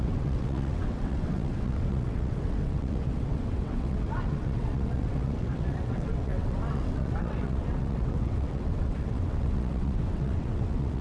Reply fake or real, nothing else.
fake